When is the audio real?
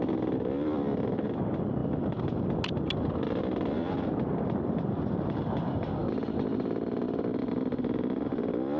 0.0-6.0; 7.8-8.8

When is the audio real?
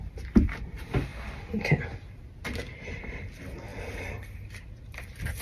1.1-2.1; 3.7-4.8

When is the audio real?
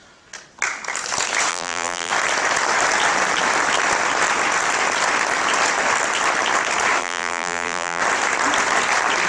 0.0-1.5; 2.1-7.0; 8.0-9.3